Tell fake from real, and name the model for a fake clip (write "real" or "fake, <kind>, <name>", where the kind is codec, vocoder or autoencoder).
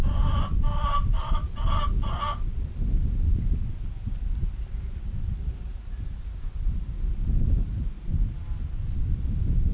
real